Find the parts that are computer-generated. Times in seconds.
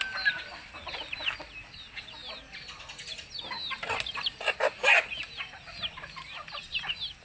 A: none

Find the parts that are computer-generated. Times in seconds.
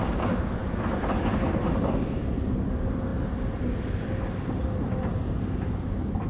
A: none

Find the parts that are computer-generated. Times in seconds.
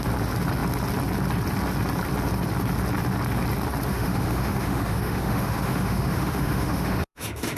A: 3.9-7.6 (autoencoder, DAC-VAE)